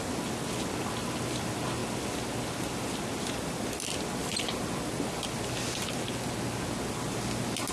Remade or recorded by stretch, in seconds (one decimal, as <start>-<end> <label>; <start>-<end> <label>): 0.0-7.7 recorded

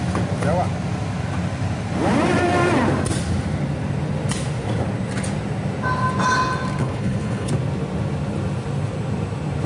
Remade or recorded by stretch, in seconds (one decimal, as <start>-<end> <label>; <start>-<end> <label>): 0.0-6.8 recorded; 6.8-7.5 remade; 7.5-9.7 recorded